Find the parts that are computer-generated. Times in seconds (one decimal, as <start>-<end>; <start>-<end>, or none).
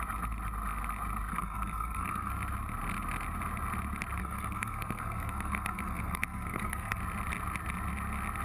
1.3-2.3; 4.2-7.0